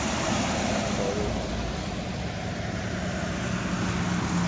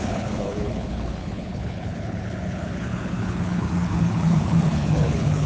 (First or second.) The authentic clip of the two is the first